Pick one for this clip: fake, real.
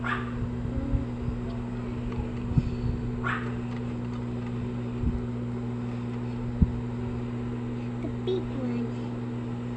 real